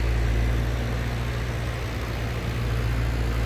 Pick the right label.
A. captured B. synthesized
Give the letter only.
A